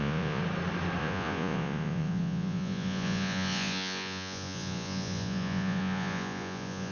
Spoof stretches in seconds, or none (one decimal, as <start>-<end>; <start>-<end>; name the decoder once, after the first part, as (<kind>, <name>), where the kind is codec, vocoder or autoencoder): 0.0-0.4 (vocoder, Vocos); 1.0-6.9